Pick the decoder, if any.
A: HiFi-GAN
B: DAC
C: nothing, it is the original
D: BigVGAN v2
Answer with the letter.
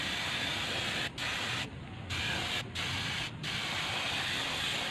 C